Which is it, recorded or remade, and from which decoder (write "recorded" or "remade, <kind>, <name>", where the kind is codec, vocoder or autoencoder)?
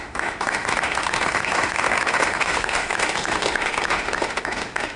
remade, autoencoder, DAC-VAE